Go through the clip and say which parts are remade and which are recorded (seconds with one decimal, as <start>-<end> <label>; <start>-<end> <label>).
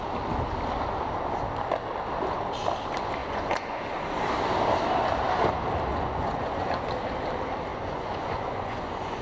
0.0-3.2 recorded; 3.2-3.8 remade; 3.8-5.9 recorded; 5.9-6.7 remade; 6.7-7.7 recorded; 7.7-9.2 remade